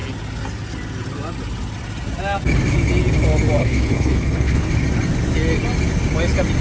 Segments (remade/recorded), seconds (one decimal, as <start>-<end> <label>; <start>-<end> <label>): 0.0-3.6 recorded; 3.6-4.7 remade; 4.7-6.6 recorded